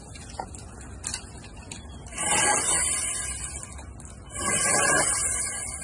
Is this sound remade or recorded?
recorded